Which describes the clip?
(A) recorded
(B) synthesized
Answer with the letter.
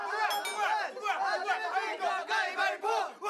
A